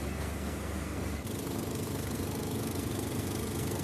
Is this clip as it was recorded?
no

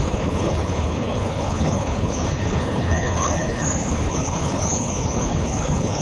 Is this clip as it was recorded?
no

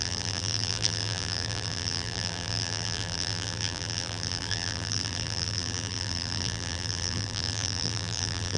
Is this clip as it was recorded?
no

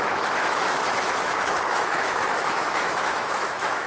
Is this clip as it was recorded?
no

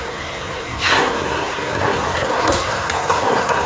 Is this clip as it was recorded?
no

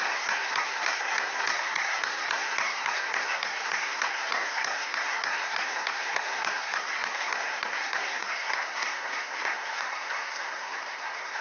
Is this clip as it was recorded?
no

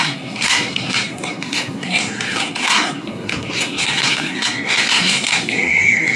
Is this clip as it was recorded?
no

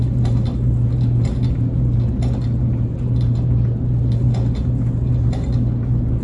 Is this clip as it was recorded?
yes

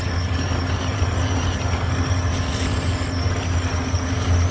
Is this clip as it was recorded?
yes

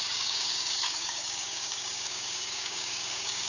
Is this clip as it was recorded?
no